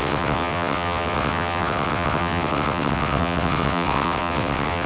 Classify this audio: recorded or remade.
remade